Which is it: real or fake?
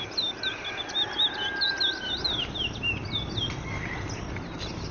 real